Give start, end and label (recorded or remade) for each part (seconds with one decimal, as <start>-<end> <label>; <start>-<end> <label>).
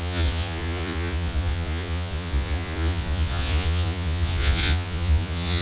0.0-5.6 remade